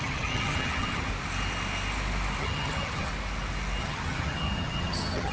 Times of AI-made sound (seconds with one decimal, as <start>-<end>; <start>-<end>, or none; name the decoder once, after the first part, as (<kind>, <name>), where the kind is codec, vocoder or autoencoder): 0.0-1.1 (vocoder, HiFi-GAN); 2.4-3.1; 3.8-5.3